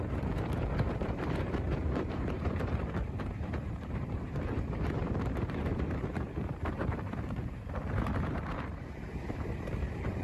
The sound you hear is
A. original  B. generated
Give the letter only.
B